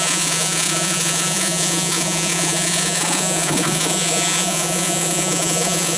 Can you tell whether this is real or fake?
fake